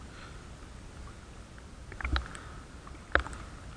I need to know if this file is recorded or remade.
recorded